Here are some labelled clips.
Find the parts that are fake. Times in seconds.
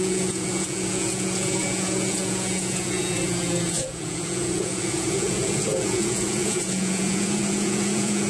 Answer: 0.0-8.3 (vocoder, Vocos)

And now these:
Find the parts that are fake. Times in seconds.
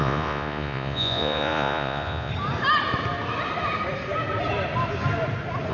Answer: 0.0-2.3 (vocoder, Vocos)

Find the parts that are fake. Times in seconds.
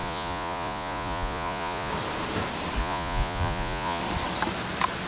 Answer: 0.0-1.9 (vocoder, Vocos); 2.8-4.0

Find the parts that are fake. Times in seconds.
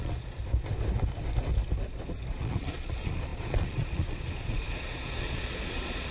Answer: 0.0-0.4 (vocoder, Vocos); 2.3-6.1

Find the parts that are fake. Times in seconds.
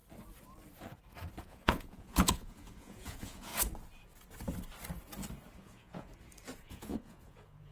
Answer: 1.4-3.5 (vocoder, Vocos); 5.6-6.1; 6.6-7.7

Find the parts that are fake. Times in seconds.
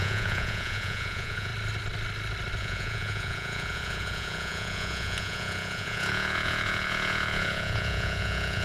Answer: 0.0-1.5 (vocoder, Vocos); 2.6-8.6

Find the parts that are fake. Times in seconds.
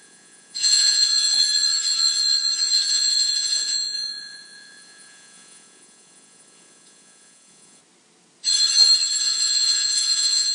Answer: 0.0-1.4 (vocoder, Vocos); 2.9-7.8; 9.2-10.5